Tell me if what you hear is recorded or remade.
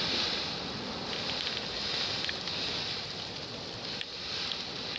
recorded